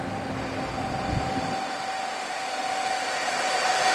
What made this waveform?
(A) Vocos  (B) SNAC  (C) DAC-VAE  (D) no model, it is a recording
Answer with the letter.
D